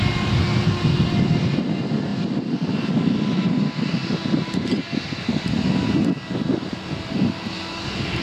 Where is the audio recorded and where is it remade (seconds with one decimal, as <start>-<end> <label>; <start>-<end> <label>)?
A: 0.0-8.2 recorded

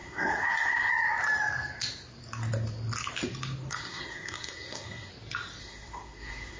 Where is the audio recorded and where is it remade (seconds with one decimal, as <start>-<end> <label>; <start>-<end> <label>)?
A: 0.0-0.9 remade; 0.9-3.7 recorded; 3.7-5.1 remade; 5.1-5.6 recorded; 5.6-6.6 remade

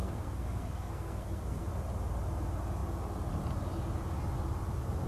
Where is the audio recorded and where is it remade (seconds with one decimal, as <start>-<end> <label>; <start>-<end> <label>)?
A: 0.0-1.7 remade; 1.7-5.1 recorded

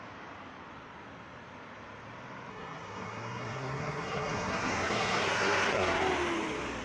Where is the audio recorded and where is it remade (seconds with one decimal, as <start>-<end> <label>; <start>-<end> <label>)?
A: 0.0-2.5 recorded; 2.5-6.0 remade; 6.0-6.8 recorded

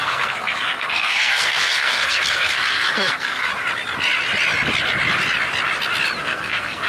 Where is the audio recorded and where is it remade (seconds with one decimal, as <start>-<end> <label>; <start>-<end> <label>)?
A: 0.0-3.5 remade; 3.5-6.2 recorded; 6.2-6.9 remade